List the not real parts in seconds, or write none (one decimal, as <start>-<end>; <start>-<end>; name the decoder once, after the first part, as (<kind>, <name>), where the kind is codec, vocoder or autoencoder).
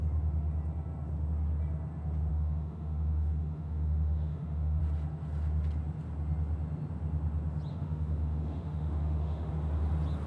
2.3-4.8 (autoencoder, DAC-VAE); 7.7-9.5